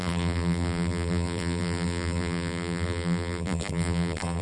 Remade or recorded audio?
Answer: remade